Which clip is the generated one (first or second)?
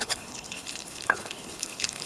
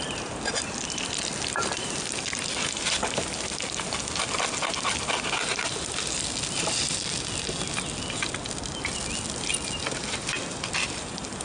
first